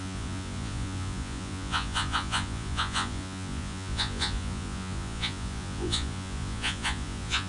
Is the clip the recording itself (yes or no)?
no